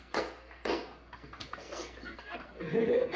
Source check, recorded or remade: remade